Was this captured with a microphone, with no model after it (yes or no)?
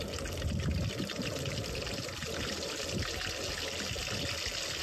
yes